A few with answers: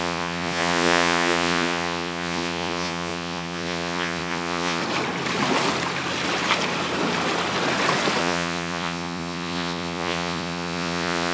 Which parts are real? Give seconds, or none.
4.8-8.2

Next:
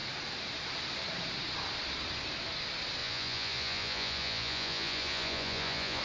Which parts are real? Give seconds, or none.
0.0-3.0